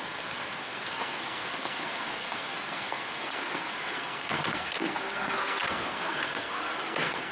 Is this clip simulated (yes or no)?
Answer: yes